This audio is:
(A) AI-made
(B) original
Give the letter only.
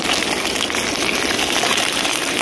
B